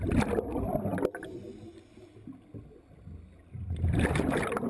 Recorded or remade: recorded